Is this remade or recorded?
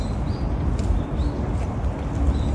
recorded